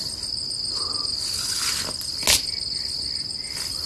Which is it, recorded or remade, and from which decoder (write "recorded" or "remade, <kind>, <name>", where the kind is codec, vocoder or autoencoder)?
recorded